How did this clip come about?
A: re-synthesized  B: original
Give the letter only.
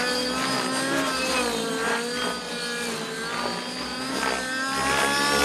B